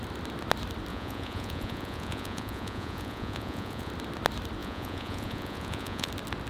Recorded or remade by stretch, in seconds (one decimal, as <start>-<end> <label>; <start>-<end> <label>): 0.0-0.9 recorded; 0.9-3.9 remade; 3.9-4.6 recorded; 4.6-6.1 remade; 6.1-6.5 recorded